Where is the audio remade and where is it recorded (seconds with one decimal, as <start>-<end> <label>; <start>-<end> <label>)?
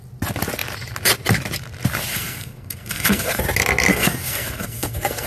0.0-2.1 recorded; 2.1-3.4 remade; 3.4-3.9 recorded; 3.9-5.3 remade